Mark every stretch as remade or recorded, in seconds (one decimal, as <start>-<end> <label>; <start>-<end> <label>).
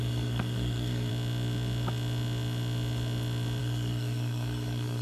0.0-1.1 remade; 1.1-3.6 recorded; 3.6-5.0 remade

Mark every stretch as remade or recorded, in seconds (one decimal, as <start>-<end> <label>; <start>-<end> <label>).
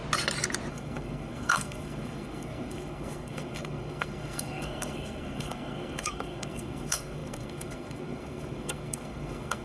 0.0-0.7 recorded; 0.7-9.6 remade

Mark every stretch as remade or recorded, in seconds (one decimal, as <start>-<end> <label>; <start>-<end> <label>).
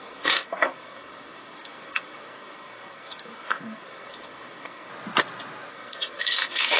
0.0-4.9 remade; 4.9-5.7 recorded; 5.7-6.8 remade